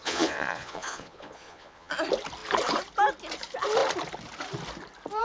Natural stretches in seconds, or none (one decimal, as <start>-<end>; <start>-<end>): 1.9-5.2